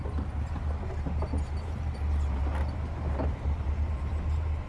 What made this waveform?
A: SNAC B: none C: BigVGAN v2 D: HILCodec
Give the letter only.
B